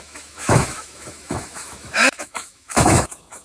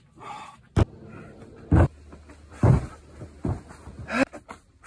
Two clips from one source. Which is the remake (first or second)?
first